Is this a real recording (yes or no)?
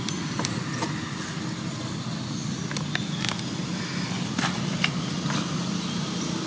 yes